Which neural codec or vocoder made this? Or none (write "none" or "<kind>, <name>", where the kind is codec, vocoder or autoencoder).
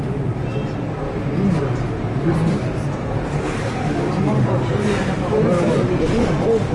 vocoder, BigVGAN v2